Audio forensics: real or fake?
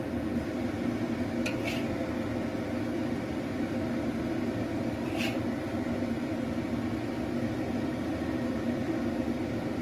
real